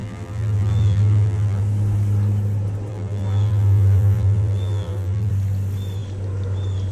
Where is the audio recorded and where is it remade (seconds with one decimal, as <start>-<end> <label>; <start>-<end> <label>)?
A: 0.0-1.6 remade; 1.6-2.9 recorded; 2.9-5.3 remade; 5.3-6.9 recorded